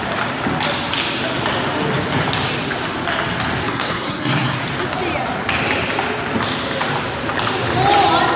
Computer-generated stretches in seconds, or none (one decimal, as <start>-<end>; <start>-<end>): 3.6-4.6